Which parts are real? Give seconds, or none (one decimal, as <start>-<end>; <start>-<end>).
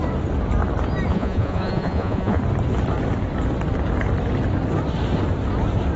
0.0-1.1; 2.4-6.0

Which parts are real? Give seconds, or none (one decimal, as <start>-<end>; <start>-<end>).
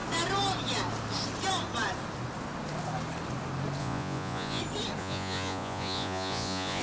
0.0-3.8; 4.6-5.0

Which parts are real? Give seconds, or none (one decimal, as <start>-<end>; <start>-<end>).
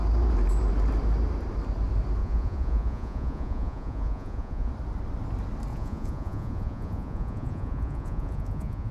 0.0-2.2; 4.7-5.7